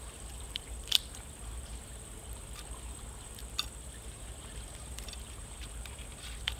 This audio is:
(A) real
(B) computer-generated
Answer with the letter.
B